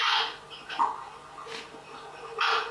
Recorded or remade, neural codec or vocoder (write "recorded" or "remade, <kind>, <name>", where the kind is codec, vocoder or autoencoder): recorded